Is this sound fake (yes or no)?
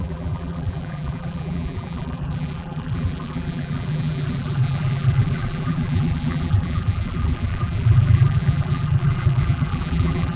yes